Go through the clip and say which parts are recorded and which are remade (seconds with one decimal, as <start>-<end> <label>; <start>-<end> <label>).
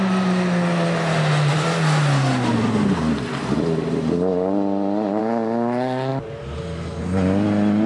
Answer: 0.0-7.9 recorded